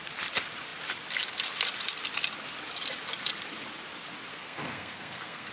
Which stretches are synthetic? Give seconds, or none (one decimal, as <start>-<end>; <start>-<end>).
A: 4.3-5.5